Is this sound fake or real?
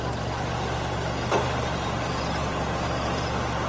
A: real